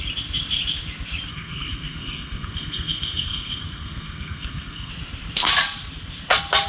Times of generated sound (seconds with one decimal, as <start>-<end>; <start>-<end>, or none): 1.3-4.9